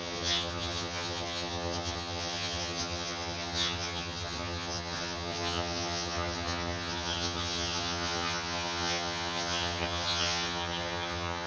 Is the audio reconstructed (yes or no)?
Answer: yes